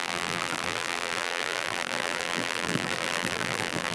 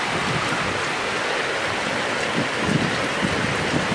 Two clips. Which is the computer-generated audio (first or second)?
first